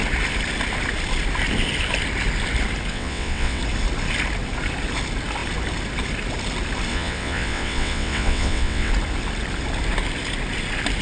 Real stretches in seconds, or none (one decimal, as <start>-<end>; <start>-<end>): 0.0-2.9; 3.6-6.9; 8.9-11.0